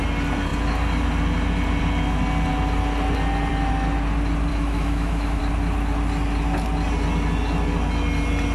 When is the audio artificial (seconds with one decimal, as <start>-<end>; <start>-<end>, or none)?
4.5-5.4